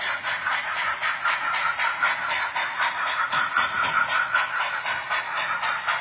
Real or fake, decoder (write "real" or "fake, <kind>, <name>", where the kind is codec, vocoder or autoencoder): real